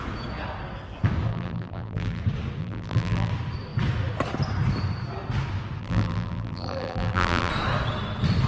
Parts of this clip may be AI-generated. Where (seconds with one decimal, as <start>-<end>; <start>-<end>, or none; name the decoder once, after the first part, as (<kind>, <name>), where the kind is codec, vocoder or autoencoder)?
1.3-2.2 (vocoder, BigVGAN v2); 2.6-3.3; 5.8-7.5